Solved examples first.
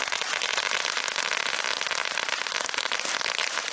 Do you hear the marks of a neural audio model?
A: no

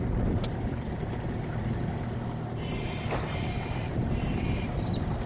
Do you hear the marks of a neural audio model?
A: no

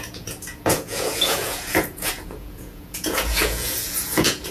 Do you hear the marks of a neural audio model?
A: yes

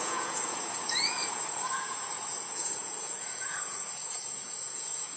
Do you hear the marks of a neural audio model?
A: yes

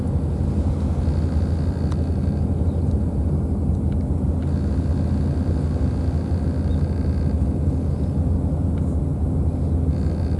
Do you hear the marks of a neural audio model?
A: no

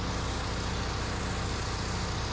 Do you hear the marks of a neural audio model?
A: no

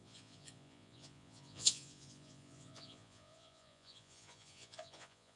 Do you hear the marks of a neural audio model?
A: yes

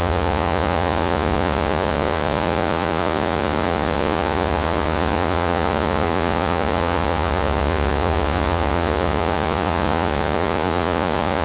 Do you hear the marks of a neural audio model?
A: yes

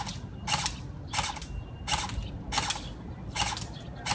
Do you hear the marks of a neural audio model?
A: no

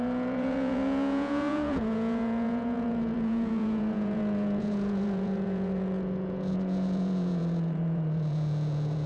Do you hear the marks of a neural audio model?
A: yes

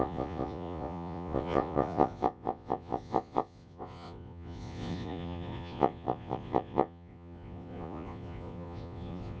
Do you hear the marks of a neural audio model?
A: yes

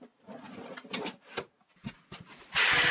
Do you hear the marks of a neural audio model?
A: no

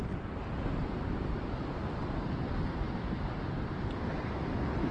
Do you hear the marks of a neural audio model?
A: no